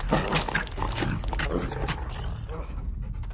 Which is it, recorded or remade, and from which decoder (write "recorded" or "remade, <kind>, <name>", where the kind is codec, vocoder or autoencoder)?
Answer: recorded